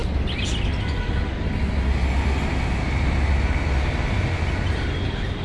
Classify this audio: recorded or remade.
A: recorded